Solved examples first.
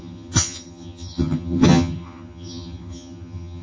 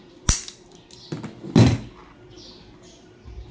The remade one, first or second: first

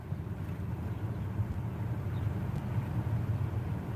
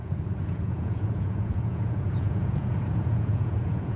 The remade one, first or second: second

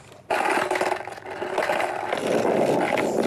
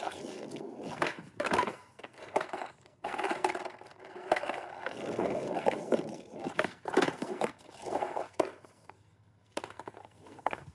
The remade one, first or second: second